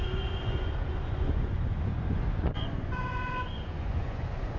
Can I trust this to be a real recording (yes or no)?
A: no